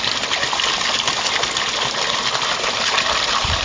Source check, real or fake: real